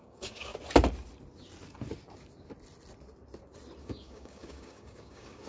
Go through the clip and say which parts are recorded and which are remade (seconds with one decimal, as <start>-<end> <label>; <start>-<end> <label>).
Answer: 0.0-0.5 remade; 0.5-3.8 recorded; 3.8-5.5 remade